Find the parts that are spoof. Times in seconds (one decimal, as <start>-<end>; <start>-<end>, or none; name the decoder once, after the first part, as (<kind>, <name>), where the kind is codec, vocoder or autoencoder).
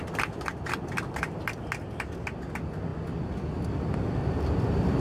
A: none